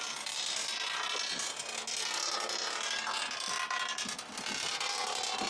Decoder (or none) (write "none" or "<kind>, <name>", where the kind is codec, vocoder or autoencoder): none